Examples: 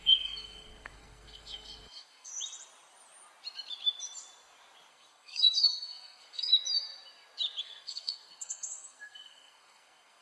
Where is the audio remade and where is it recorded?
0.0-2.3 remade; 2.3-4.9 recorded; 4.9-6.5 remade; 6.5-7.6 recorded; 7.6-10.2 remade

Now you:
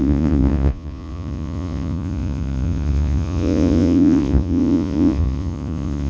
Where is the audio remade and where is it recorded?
0.0-6.1 remade